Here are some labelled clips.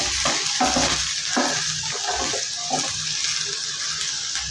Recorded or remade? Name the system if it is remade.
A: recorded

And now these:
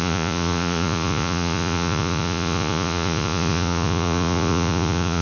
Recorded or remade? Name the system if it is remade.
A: remade, vocoder, Vocos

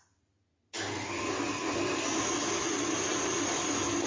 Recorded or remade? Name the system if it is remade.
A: recorded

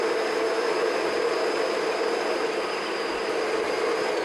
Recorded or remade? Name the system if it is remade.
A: recorded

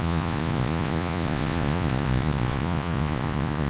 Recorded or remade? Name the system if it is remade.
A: remade, vocoder, Vocos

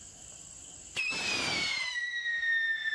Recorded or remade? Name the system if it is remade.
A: recorded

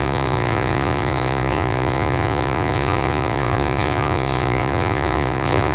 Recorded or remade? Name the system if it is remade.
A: remade, vocoder, Vocos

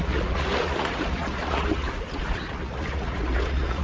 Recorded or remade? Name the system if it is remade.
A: remade, vocoder, Vocos